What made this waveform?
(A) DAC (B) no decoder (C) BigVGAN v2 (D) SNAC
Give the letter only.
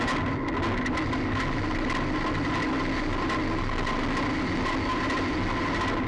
B